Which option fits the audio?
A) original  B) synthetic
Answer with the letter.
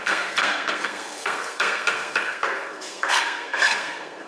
B